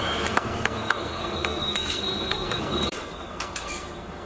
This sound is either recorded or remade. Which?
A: remade